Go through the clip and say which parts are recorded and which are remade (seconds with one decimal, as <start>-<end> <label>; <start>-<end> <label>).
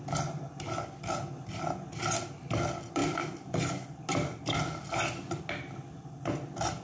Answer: 0.0-6.8 recorded